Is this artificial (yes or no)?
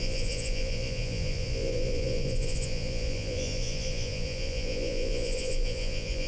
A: yes